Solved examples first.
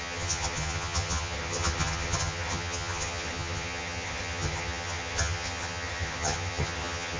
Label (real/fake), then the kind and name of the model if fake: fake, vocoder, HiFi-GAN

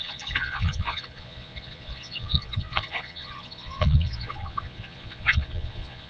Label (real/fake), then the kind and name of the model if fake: fake, vocoder, Vocos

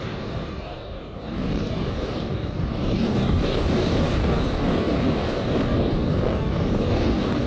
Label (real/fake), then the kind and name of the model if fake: fake, codec, DAC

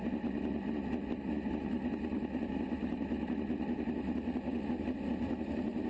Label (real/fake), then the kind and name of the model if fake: real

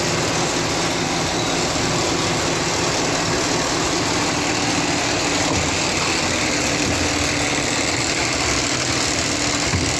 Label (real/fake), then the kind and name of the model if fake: real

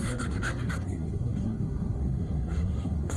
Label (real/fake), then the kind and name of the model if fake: fake, codec, SNAC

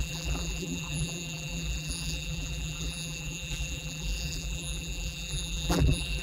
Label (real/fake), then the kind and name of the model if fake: fake, vocoder, BigVGAN v2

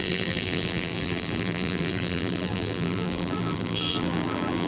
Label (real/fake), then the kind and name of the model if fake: fake, vocoder, BigVGAN v2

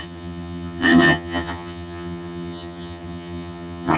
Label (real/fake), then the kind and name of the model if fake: fake, vocoder, HiFi-GAN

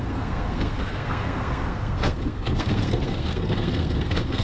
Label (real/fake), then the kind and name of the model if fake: fake, codec, SNAC